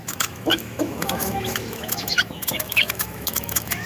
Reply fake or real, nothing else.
fake